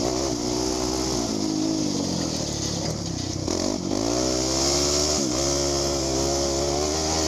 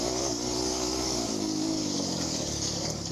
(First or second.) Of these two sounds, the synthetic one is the second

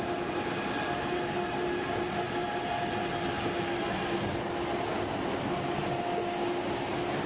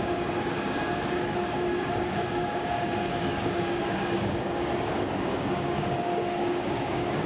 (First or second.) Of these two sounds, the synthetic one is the second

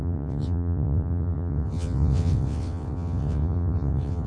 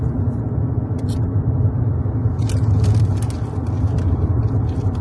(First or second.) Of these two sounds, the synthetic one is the first